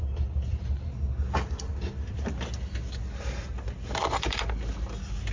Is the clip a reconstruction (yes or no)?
no